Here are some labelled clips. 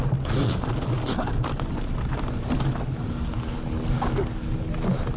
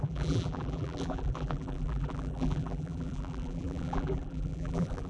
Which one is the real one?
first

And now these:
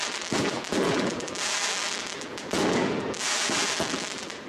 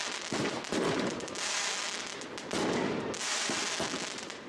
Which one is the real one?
second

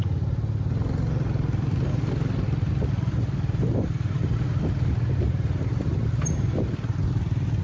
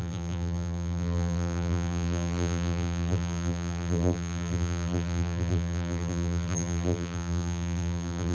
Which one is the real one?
first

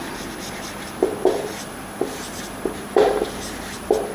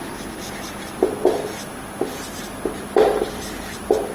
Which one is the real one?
second